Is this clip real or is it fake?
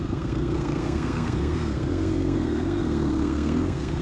fake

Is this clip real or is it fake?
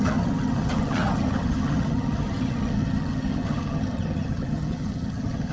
fake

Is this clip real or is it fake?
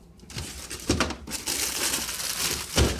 real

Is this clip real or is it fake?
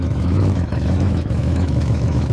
fake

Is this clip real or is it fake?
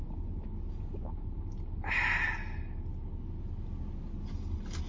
real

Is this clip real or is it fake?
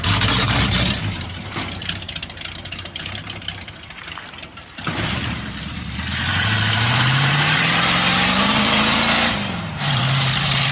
fake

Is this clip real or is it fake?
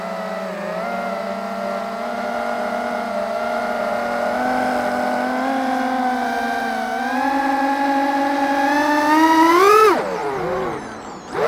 real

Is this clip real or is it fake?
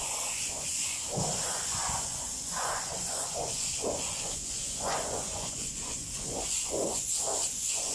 fake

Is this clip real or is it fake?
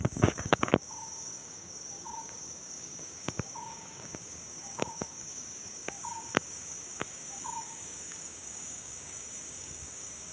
fake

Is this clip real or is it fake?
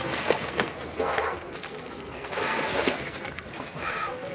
fake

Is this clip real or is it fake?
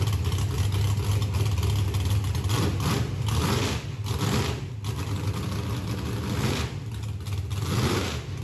real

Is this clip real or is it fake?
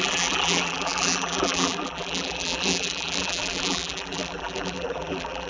fake